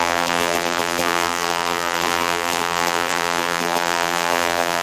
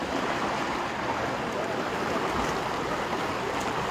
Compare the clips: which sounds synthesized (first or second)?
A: first